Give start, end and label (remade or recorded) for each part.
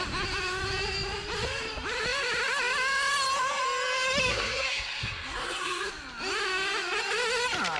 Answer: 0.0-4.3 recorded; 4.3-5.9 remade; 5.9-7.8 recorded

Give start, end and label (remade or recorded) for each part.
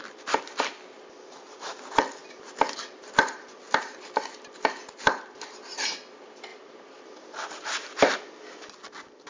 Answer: 0.0-2.2 recorded; 2.2-4.2 remade; 4.2-6.5 recorded; 6.5-7.3 remade; 7.3-9.3 recorded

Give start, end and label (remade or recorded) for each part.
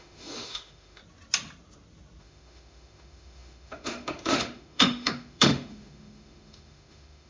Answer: 0.0-1.0 remade; 1.0-2.2 recorded; 2.2-7.3 remade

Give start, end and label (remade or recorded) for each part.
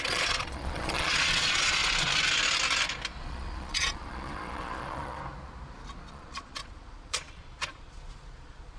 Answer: 0.0-1.8 remade; 1.8-3.2 recorded; 3.2-5.2 remade; 5.2-6.1 recorded; 6.1-8.8 remade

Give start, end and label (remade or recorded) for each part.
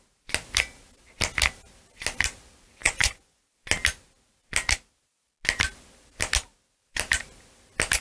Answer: 0.0-2.8 recorded; 2.8-3.4 remade; 3.4-8.0 recorded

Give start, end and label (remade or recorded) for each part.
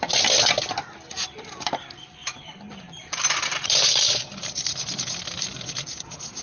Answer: 0.0-2.2 recorded; 2.2-5.4 remade; 5.4-6.4 recorded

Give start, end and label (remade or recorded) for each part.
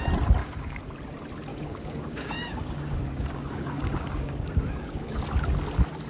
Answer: 0.0-0.4 recorded; 0.4-0.9 remade; 0.9-1.5 recorded; 1.5-5.2 remade; 5.2-6.1 recorded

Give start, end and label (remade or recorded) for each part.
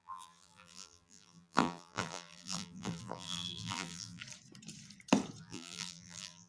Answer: 0.0-4.2 remade; 4.2-5.4 recorded; 5.4-6.5 remade